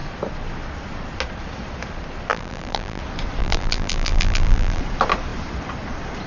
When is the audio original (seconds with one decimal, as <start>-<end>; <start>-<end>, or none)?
0.0-2.3; 3.0-3.4; 4.8-6.3